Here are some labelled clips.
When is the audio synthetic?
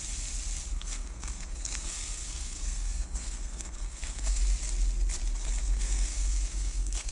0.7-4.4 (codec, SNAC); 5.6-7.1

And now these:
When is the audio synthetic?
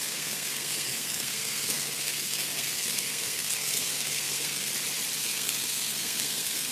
0.0-4.7 (codec, SNAC); 5.2-6.7